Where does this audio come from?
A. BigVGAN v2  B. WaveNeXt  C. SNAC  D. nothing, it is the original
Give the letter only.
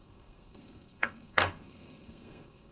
C